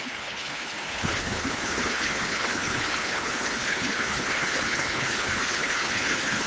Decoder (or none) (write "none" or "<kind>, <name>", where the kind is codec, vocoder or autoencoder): codec, HILCodec